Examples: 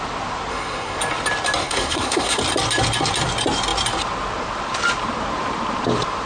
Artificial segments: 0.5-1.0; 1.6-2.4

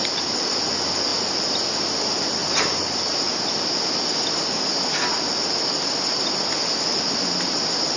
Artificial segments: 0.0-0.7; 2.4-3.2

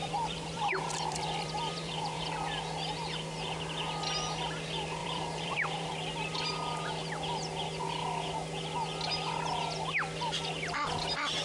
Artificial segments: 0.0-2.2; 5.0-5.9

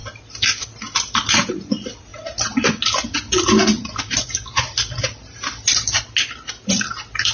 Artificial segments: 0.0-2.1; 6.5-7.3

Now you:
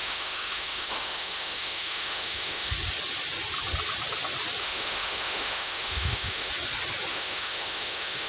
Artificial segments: 0.0-2.7; 4.6-6.5; 7.1-8.3

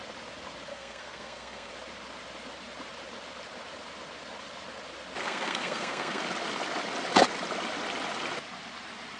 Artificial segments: 0.7-1.7; 5.2-6.2

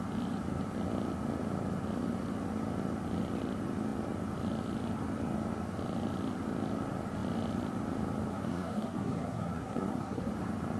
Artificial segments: 8.3-10.3